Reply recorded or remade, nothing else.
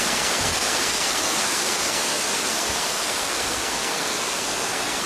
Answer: remade